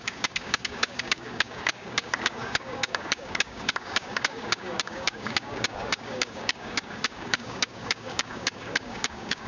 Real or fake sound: fake